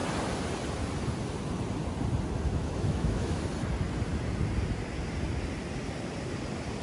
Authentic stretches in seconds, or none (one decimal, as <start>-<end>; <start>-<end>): 0.0-2.6; 3.4-6.8